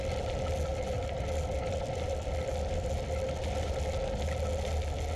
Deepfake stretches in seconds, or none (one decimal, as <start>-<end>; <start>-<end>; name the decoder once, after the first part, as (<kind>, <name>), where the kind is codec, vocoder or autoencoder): 0.7-3.8 (vocoder, BigVGAN v2)